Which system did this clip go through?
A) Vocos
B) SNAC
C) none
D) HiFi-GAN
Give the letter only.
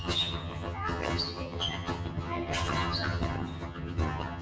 D